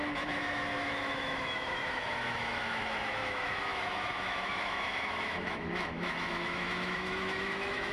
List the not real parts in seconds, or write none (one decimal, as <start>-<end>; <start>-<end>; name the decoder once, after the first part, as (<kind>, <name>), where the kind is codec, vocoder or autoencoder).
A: 0.0-7.9 (autoencoder, DAC-VAE)